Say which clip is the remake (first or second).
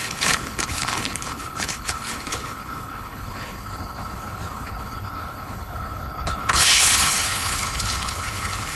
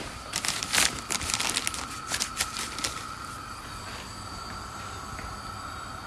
first